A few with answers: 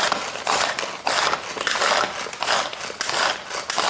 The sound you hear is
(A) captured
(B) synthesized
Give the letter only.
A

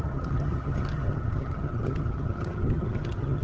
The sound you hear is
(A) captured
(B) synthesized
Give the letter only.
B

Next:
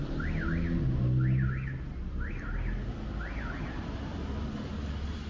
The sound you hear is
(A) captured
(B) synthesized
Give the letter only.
A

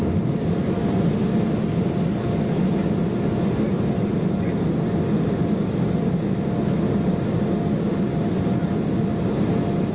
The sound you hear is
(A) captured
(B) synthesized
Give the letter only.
A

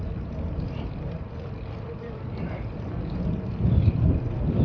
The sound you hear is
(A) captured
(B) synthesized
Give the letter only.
A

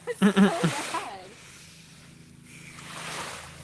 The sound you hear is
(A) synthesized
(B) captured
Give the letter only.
B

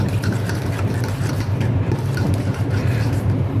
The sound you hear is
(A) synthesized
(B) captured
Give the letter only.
A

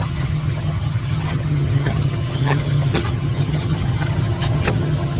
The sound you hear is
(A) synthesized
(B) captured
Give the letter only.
A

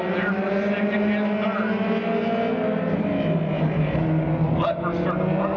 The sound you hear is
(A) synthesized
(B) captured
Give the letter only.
B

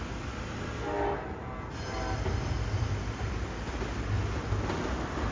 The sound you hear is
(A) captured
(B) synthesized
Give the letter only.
A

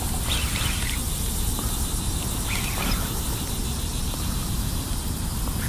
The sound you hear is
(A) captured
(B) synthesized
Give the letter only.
A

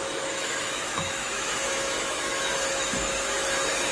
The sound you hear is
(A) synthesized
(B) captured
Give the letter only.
A